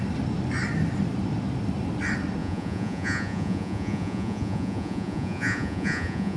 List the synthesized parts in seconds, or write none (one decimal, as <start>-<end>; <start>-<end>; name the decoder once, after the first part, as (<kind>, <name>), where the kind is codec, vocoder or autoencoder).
2.4-6.4 (vocoder, Vocos)